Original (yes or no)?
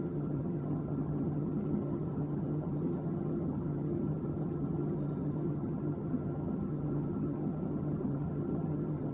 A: no